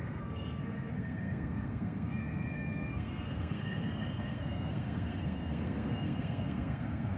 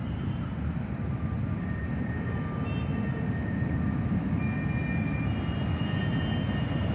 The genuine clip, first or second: second